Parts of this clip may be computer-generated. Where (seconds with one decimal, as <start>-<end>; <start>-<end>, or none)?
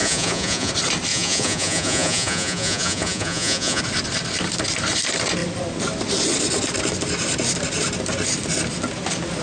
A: 0.0-0.7; 1.1-3.8